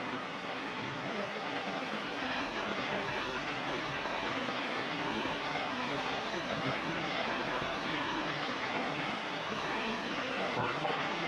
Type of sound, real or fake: fake